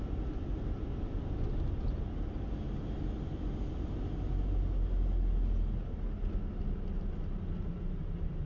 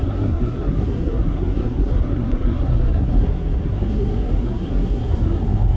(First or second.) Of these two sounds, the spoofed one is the second